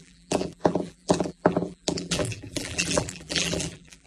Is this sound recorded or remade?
remade